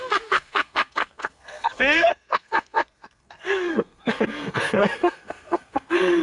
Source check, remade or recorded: remade